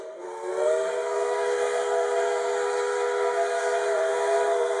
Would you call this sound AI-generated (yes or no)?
yes